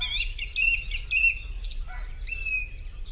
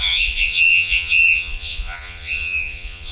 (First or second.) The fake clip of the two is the second